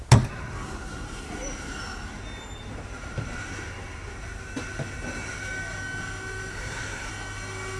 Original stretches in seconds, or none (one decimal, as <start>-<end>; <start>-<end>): 0.0-6.5; 7.1-7.8